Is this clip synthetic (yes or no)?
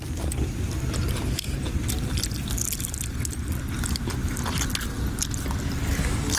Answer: no